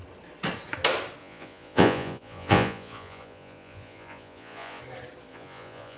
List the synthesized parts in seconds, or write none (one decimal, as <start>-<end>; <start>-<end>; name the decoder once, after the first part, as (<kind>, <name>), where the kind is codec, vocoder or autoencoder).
1.2-4.8 (vocoder, Vocos); 5.3-6.0